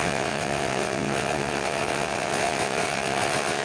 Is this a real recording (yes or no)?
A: no